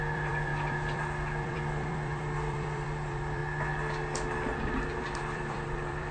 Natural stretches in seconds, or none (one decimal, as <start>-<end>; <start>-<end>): 3.4-4.6